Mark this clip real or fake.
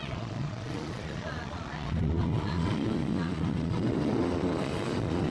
fake